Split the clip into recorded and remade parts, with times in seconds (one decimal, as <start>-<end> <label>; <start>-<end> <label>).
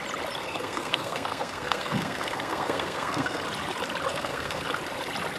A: 0.0-0.4 recorded; 0.4-3.4 remade; 3.4-4.1 recorded; 4.1-4.6 remade; 4.6-5.4 recorded